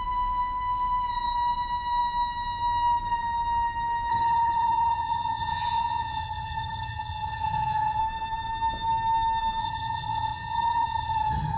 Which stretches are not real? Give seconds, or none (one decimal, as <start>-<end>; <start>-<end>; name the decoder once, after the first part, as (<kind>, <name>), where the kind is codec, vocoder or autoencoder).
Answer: 4.1-8.0 (vocoder, HiFi-GAN); 9.6-11.6